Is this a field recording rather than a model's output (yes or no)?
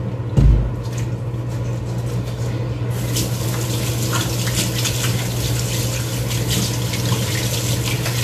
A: yes